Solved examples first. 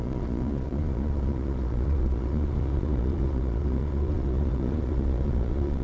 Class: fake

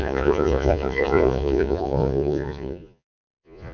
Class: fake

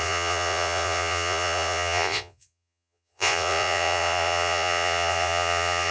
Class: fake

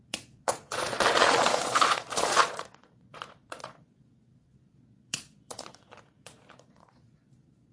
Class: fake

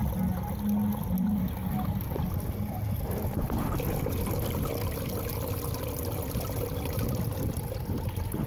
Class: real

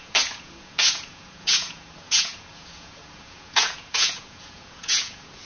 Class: fake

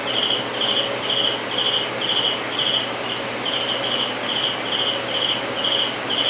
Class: real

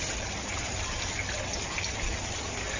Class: real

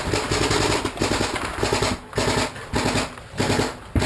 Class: real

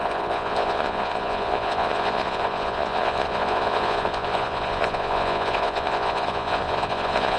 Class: fake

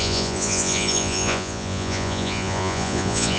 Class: fake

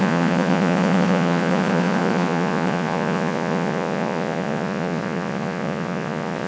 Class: fake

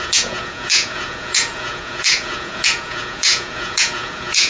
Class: fake